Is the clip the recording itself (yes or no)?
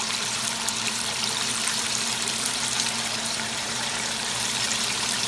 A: no